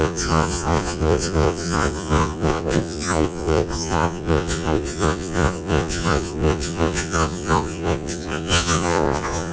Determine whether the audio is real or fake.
fake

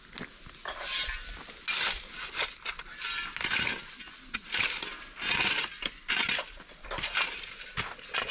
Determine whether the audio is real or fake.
real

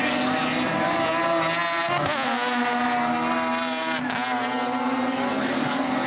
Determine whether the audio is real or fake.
real